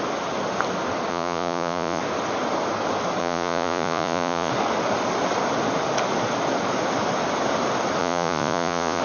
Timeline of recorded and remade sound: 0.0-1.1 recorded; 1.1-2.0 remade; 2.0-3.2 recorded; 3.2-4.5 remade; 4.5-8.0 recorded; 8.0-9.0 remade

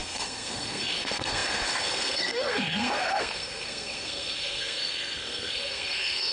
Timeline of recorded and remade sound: 0.0-6.3 remade